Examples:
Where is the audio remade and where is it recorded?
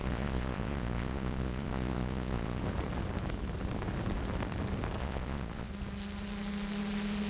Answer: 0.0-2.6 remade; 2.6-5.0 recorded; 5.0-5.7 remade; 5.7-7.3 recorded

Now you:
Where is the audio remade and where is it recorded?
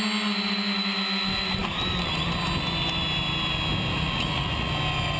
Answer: 0.0-3.9 recorded; 3.9-4.7 remade; 4.7-5.2 recorded